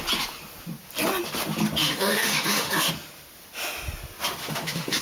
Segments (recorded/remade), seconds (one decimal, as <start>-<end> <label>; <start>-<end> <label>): 0.0-1.8 recorded; 1.8-2.9 remade; 2.9-4.4 recorded; 4.4-5.0 remade